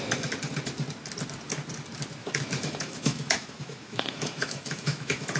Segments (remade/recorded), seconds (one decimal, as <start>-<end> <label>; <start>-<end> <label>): 0.0-2.2 recorded; 2.2-5.4 remade

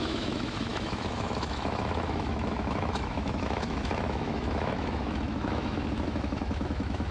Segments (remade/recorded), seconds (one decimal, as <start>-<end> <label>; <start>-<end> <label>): 0.0-7.1 remade

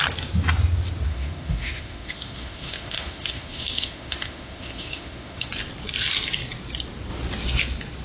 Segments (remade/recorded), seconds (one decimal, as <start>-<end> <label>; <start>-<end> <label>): 0.0-1.1 recorded; 1.1-5.5 remade; 5.5-8.0 recorded